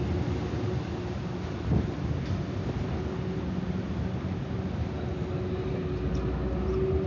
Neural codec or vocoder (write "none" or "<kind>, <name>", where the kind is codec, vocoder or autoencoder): none